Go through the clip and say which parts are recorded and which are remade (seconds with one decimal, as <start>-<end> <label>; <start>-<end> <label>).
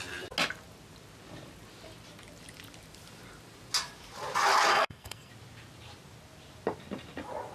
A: 0.0-4.7 recorded; 4.7-5.3 remade; 5.3-7.5 recorded